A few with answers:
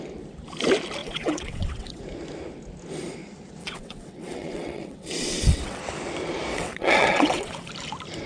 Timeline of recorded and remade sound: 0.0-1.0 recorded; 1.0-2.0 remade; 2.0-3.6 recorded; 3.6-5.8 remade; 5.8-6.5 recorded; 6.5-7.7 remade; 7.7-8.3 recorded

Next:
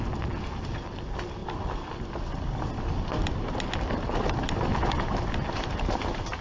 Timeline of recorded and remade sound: 0.0-6.4 recorded

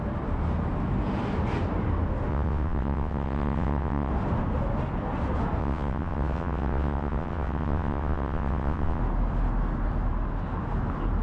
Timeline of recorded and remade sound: 0.0-2.3 recorded; 2.3-4.1 remade; 4.1-5.6 recorded; 5.6-9.0 remade; 9.0-11.2 recorded

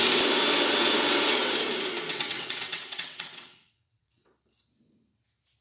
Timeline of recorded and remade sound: 0.0-2.1 recorded; 2.1-4.3 remade; 4.3-5.6 recorded

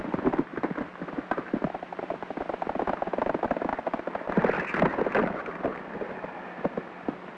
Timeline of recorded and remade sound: 0.0-7.4 recorded

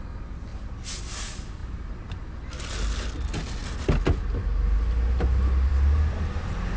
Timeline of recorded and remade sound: 0.0-6.8 recorded

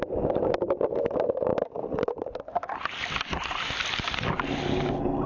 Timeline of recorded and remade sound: 0.0-5.3 recorded

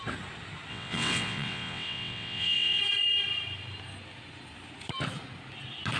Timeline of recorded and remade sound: 0.0-0.7 recorded; 0.7-2.8 remade; 2.8-6.0 recorded